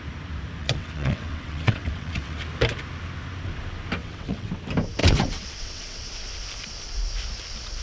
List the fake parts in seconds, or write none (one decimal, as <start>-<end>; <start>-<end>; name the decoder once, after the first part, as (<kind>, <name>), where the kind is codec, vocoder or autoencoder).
0.6-2.4 (vocoder, WaveNeXt); 4.0-4.5; 5.0-6.1

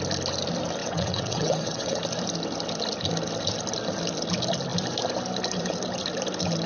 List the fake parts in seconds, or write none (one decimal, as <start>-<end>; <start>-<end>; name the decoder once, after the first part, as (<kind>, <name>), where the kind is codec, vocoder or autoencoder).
0.8-2.0 (vocoder, WaveNeXt)

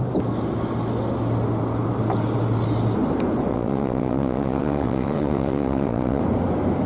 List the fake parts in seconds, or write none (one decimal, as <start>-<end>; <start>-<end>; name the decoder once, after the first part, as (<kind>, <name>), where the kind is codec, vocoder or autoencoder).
3.5-6.2 (vocoder, WaveNeXt)

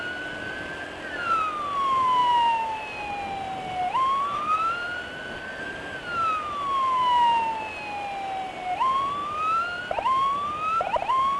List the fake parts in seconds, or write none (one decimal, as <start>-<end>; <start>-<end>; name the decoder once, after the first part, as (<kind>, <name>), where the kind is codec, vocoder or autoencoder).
none

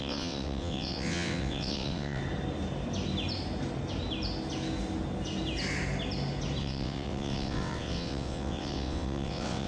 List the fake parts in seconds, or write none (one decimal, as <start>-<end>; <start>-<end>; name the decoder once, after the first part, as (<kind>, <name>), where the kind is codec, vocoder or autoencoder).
0.0-2.2 (vocoder, WaveNeXt); 6.6-9.7